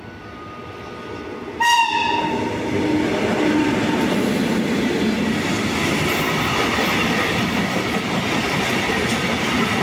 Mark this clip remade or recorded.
recorded